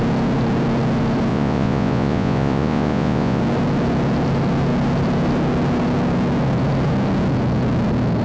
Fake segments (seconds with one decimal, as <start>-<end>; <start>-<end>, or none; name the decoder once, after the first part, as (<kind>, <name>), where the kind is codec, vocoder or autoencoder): 1.3-3.4 (vocoder, Vocos)